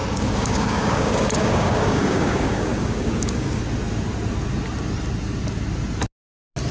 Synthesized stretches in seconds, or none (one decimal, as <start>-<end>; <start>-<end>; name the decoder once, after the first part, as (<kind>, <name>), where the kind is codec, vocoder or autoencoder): 0.0-3.6 (codec, DAC)